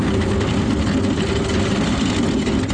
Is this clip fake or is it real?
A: real